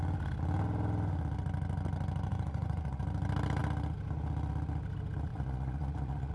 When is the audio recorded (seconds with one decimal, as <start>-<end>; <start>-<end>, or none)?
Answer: 0.0-2.3; 3.0-5.3